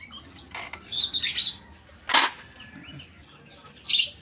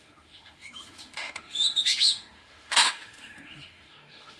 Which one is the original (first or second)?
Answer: first